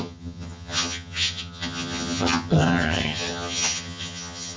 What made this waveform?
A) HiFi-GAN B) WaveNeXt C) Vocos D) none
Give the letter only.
A